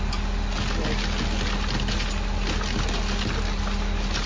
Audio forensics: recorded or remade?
recorded